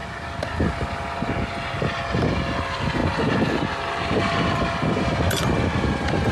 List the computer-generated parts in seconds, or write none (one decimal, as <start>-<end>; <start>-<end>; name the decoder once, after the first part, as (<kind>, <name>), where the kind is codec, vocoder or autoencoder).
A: none